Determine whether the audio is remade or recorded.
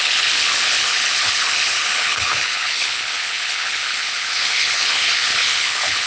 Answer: remade